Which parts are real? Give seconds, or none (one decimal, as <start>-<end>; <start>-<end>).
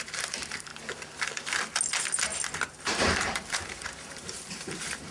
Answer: 0.7-2.8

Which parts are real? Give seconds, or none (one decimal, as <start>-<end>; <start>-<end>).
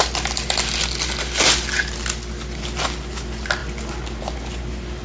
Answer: 0.0-5.0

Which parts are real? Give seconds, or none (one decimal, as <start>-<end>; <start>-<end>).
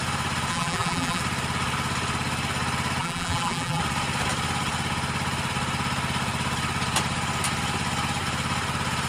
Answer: 0.0-0.5; 1.2-3.0; 3.8-9.1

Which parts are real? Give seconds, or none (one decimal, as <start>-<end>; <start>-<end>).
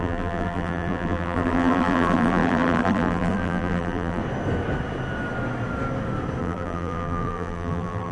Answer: 4.2-6.4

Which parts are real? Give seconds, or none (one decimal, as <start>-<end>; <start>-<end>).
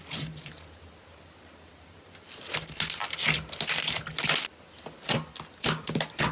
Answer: 0.0-6.3